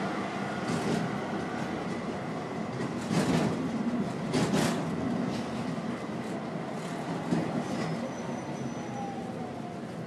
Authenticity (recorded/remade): recorded